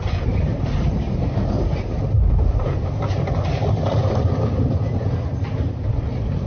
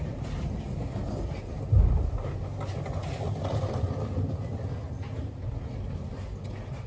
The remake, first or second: first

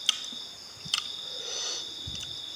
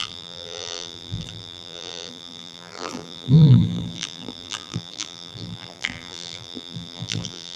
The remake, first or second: second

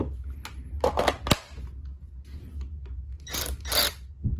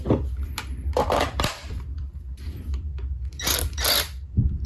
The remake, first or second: second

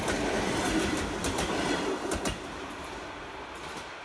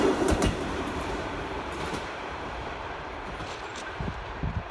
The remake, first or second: second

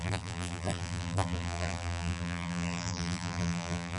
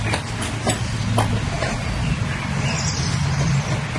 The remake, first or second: first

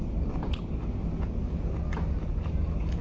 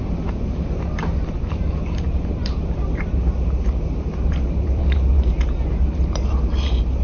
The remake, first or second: second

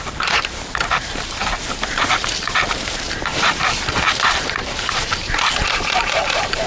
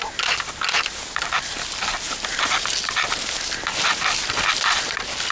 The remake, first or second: first